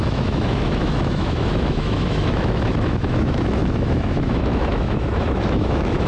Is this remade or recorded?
remade